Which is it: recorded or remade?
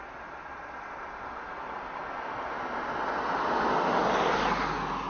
recorded